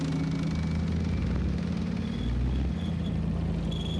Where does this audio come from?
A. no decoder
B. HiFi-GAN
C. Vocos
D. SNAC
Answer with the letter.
A